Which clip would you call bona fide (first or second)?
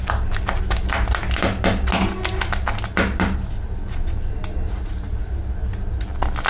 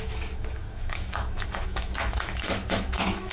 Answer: first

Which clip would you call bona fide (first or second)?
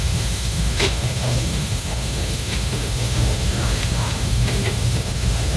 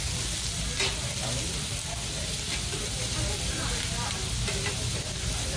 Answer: second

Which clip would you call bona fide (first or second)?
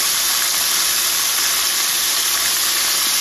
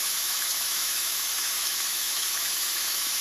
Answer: first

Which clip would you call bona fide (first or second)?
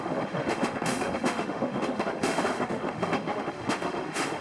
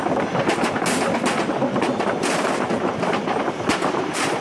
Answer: second